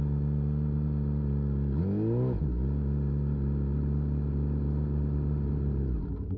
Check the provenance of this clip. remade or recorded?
recorded